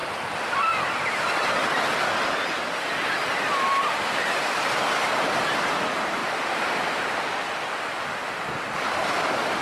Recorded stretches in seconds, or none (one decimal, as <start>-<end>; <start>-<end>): 0.0-3.4; 6.2-8.3